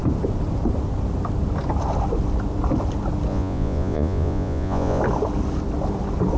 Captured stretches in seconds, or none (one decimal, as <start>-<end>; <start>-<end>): 0.0-3.3; 5.0-6.4